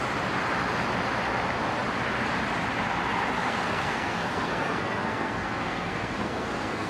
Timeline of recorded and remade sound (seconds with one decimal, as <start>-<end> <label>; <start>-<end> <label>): 0.0-3.4 recorded; 3.4-6.9 remade